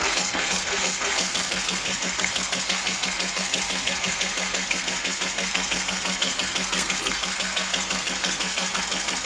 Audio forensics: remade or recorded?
remade